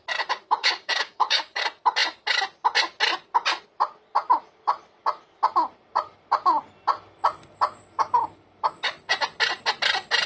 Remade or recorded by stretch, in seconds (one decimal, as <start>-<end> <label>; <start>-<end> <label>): 0.0-0.6 recorded; 0.6-1.6 remade; 1.6-10.3 recorded